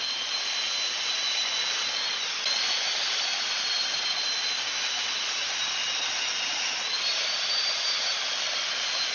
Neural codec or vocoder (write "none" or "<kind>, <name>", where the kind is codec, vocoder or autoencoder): none